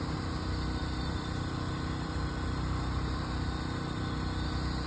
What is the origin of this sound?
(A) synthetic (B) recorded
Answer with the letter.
A